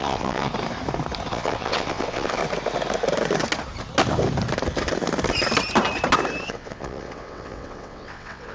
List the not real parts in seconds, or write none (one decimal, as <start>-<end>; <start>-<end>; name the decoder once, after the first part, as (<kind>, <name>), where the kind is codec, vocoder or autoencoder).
0.0-0.5 (vocoder, WaveNeXt); 1.3-2.4; 6.4-8.5